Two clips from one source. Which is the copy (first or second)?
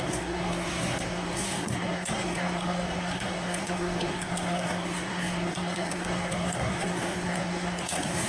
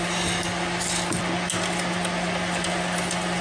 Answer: first